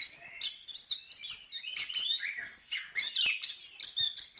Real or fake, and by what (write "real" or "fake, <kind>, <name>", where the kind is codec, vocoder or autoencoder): real